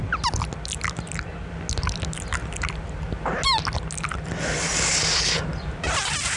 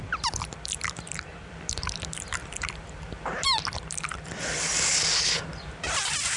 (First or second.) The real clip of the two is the first